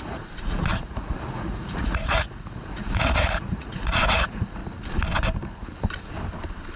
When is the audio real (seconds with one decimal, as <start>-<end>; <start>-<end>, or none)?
4.6-6.8